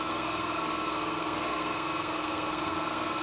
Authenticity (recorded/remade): remade